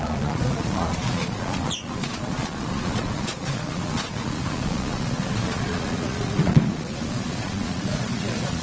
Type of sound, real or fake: fake